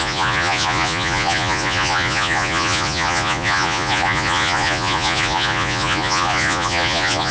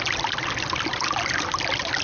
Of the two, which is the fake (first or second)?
first